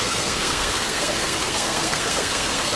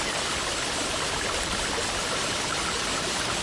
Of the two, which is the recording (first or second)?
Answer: second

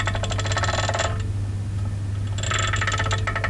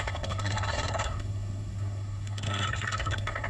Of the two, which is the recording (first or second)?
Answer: first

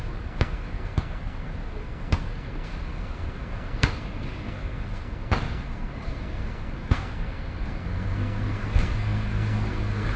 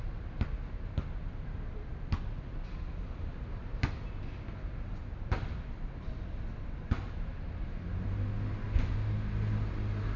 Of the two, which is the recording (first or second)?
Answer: second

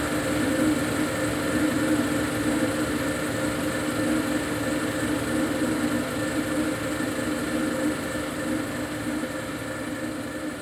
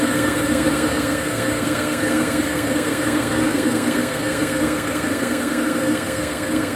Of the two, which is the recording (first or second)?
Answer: first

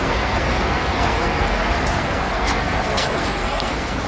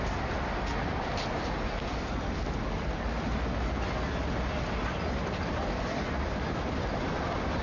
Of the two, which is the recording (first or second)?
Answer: second